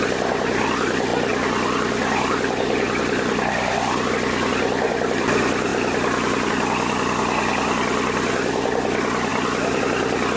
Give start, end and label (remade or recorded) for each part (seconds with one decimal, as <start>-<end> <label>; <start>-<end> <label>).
0.0-10.4 recorded